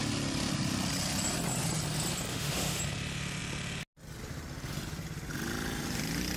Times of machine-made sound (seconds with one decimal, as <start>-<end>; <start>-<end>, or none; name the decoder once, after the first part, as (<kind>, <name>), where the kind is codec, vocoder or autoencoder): 2.3-2.8 (autoencoder, DAC-VAE)